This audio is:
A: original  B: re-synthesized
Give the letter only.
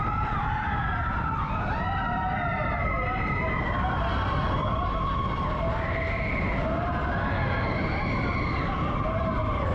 A